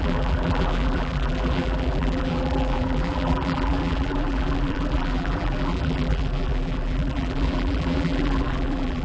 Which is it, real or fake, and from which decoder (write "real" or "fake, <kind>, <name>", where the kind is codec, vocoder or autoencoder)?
fake, vocoder, BigVGAN v2